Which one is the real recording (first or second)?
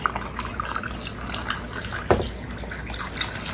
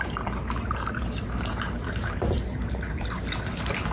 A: first